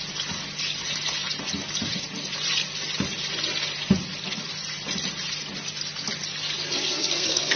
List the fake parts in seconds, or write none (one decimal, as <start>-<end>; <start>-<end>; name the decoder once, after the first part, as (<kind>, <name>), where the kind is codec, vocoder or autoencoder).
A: 6.6-7.6 (codec, SNAC)